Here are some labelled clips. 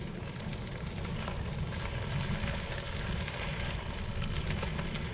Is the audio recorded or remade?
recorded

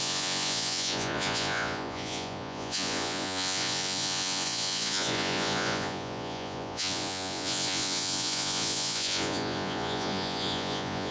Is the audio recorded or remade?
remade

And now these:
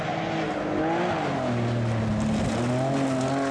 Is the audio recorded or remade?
recorded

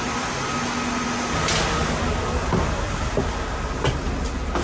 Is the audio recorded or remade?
recorded